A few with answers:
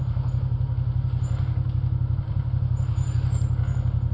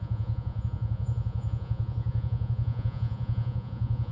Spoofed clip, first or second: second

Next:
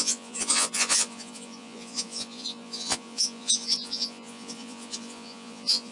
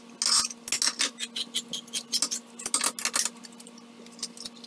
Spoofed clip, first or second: first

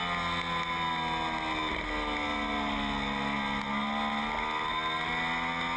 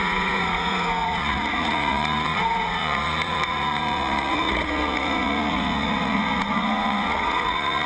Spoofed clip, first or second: second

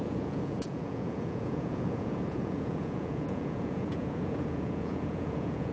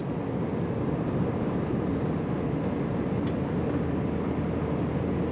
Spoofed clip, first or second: first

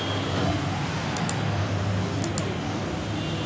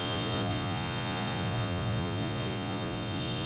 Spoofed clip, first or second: second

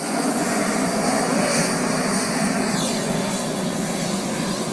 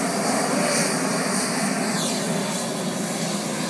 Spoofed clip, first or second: first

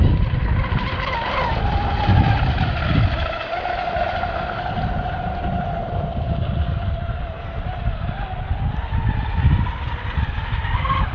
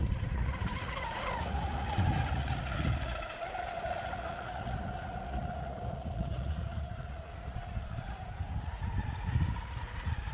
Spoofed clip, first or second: second